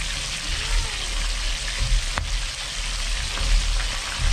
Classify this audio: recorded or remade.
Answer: recorded